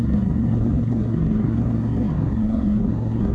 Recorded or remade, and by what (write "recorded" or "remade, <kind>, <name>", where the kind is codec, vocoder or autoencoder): remade, codec, SNAC